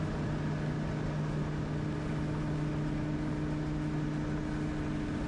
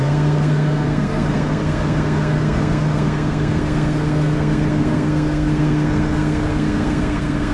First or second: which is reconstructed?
second